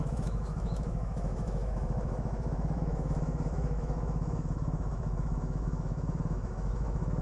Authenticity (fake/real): fake